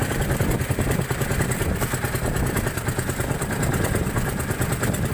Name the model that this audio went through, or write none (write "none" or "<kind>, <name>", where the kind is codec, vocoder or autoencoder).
vocoder, BigVGAN v2